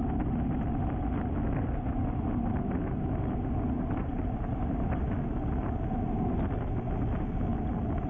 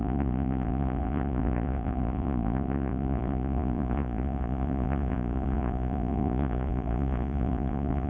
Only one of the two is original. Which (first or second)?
first